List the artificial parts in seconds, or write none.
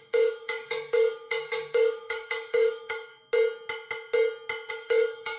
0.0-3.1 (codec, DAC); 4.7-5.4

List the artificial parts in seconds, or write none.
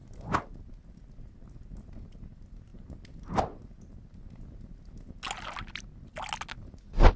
none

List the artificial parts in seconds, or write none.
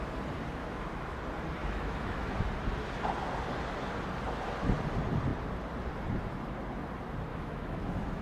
0.6-1.2 (autoencoder, DAC-VAE); 1.6-2.4; 7.3-8.2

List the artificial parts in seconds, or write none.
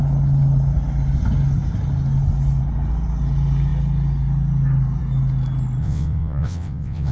5.8-7.1 (vocoder, WaveNeXt)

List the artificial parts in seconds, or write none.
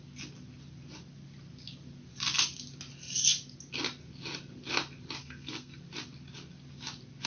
5.2-5.8 (codec, SNAC)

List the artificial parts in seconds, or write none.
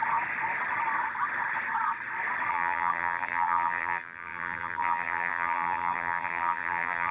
2.5-7.1 (vocoder, BigVGAN v2)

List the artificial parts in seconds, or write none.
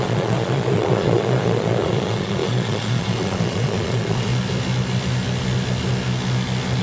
0.0-4.3 (vocoder, Vocos)